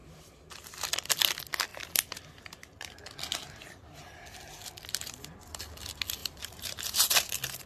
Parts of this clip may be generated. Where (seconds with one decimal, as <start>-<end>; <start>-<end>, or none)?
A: 6.2-7.7